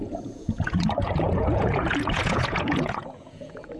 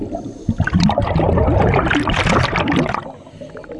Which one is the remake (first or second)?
first